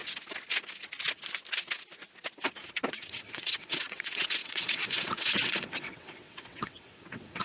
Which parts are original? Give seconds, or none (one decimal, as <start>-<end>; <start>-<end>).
0.0-2.9